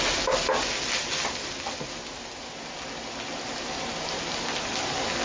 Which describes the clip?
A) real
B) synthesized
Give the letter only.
A